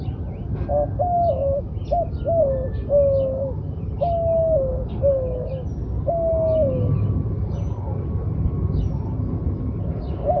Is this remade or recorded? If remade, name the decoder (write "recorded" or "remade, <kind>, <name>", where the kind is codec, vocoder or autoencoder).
recorded